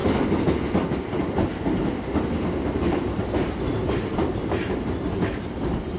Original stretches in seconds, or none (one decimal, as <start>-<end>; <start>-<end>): 0.0-6.0